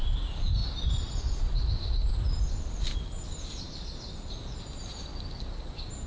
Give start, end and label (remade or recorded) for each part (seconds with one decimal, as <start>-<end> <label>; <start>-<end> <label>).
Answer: 0.0-6.1 recorded